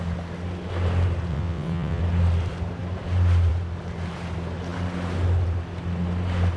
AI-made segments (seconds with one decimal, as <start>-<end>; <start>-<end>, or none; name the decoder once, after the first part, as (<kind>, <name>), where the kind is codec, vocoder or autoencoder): 1.3-2.0 (vocoder, WaveNeXt)